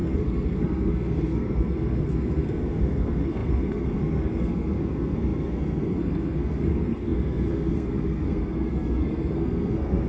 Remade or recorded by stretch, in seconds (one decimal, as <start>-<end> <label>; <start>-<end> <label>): 0.0-10.1 remade